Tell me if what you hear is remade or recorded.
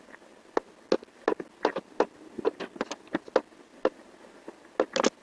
recorded